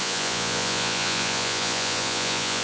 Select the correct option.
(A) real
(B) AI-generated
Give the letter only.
B